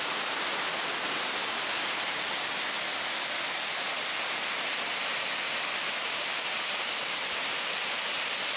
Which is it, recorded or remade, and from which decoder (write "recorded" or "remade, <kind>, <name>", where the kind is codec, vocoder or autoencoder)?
recorded